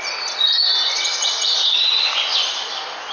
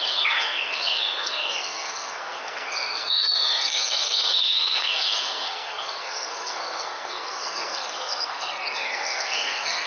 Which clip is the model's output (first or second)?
second